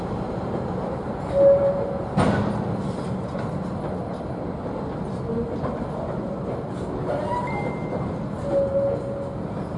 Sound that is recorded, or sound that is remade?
recorded